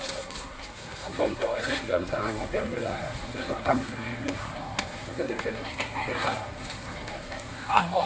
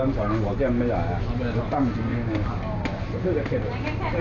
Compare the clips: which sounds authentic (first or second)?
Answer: second